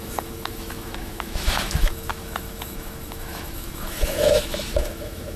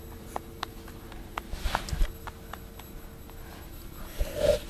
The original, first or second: second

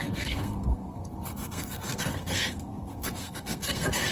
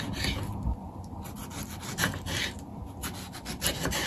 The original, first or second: second